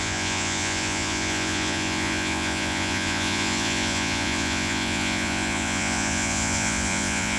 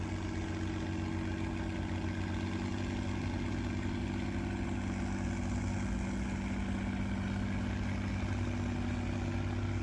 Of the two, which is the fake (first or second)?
first